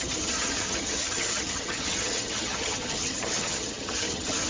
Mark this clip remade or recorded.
remade